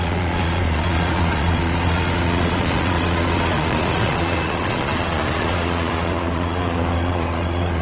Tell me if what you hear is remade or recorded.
remade